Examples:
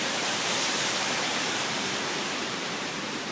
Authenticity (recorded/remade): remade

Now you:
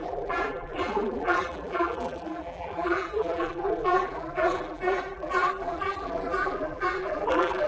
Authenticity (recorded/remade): remade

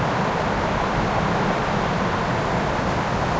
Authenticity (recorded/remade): recorded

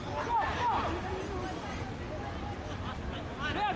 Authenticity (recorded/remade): recorded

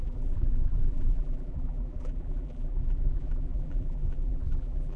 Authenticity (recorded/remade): remade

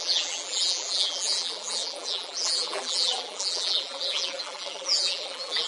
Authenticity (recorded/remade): remade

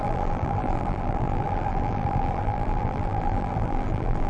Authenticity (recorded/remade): remade